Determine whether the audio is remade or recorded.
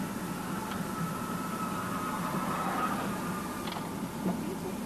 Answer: recorded